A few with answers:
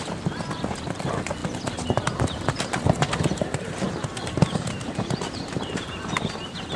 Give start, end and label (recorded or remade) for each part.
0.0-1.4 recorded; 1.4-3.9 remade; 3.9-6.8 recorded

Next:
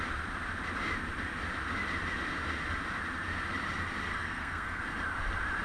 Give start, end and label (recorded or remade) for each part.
0.0-4.1 recorded; 4.1-4.8 remade; 4.8-5.6 recorded

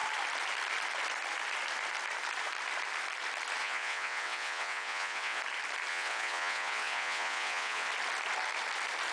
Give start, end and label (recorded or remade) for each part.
0.0-3.6 recorded; 3.6-5.4 remade; 5.4-5.9 recorded; 5.9-7.9 remade; 7.9-9.1 recorded

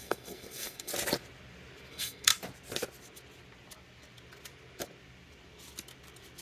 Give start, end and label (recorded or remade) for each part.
0.0-0.9 remade; 0.9-1.9 recorded; 1.9-2.3 remade; 2.3-6.4 recorded

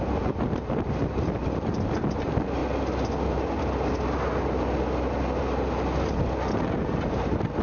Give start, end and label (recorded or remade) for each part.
0.0-1.4 remade; 1.4-2.2 recorded; 2.2-2.6 remade; 2.6-6.5 recorded; 6.5-7.6 remade

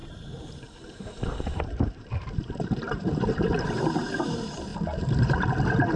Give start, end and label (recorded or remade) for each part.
0.0-6.0 remade

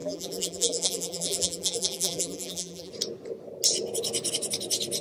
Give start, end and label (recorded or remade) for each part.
0.0-2.9 remade; 2.9-5.0 recorded